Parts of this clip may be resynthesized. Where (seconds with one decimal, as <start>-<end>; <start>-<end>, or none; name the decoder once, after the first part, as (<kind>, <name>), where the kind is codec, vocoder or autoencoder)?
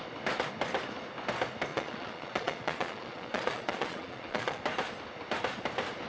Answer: 1.7-4.6 (vocoder, Vocos)